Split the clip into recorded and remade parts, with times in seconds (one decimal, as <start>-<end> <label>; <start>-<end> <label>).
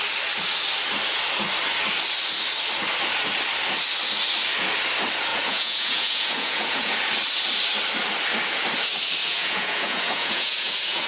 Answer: 0.0-5.3 recorded; 5.3-7.0 remade; 7.0-9.2 recorded; 9.2-11.1 remade